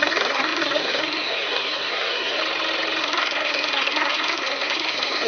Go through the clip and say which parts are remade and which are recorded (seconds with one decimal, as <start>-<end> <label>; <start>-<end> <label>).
0.0-2.4 remade; 2.4-3.0 recorded; 3.0-5.3 remade